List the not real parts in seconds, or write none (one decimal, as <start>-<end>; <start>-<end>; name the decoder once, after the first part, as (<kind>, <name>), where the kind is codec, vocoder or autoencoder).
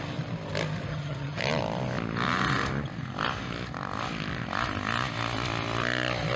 0.9-1.4 (vocoder, HiFi-GAN)